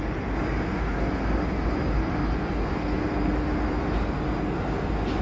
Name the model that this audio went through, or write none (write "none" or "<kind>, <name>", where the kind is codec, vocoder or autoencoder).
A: none